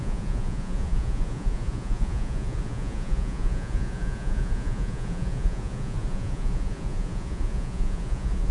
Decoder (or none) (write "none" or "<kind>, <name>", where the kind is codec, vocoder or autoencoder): vocoder, Vocos